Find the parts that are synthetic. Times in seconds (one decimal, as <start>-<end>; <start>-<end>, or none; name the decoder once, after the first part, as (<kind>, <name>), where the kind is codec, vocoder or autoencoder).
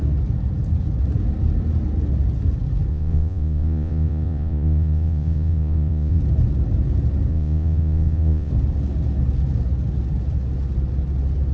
2.9-6.2 (vocoder, Vocos); 7.3-8.5